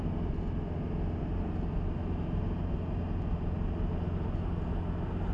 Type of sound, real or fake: real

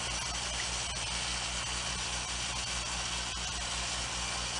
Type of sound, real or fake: real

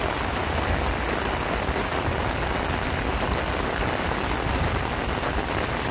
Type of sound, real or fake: real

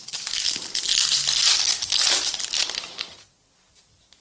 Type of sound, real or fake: real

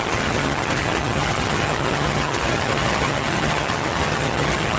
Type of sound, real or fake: fake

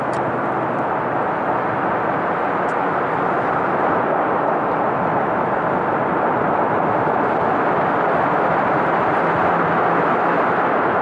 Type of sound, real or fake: real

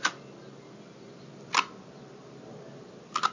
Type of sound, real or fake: real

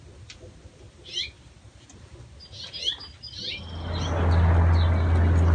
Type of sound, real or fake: real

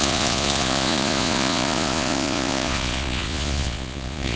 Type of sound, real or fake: fake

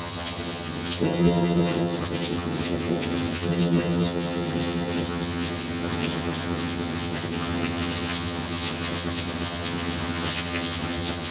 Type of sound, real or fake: fake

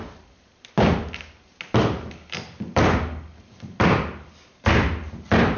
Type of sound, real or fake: real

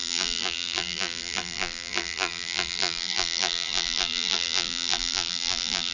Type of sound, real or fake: fake